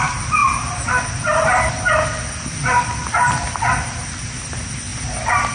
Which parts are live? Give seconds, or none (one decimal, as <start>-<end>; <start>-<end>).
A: 0.0-5.5